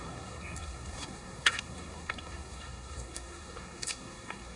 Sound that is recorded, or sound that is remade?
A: remade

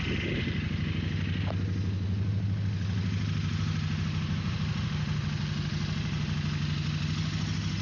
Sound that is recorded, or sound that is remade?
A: recorded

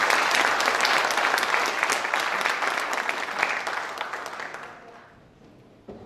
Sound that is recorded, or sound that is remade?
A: recorded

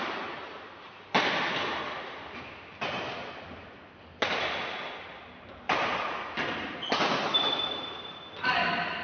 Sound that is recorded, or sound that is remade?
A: recorded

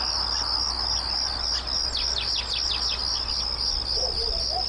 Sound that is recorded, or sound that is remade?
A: recorded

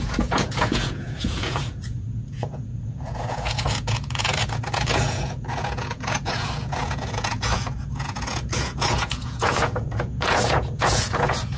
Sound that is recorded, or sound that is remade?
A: remade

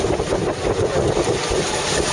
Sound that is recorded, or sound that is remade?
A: recorded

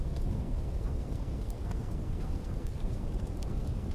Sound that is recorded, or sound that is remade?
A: remade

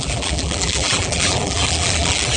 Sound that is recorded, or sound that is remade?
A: remade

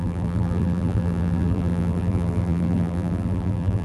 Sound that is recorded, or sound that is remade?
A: remade